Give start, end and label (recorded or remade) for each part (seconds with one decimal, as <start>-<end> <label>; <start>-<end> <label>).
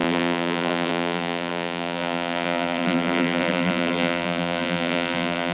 0.0-5.5 remade